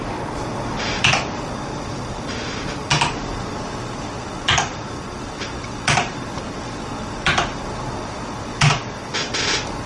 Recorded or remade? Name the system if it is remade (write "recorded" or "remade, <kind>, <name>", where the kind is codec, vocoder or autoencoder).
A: recorded